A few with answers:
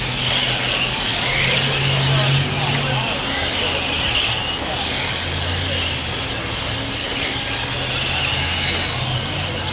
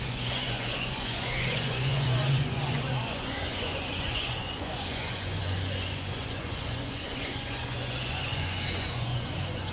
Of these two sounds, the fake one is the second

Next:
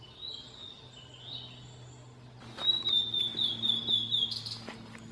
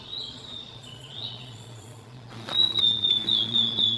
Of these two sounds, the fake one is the second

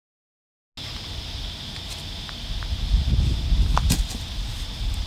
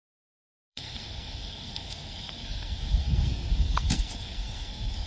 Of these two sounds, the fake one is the second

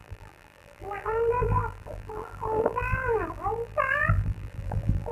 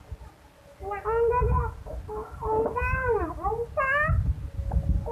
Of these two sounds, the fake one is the first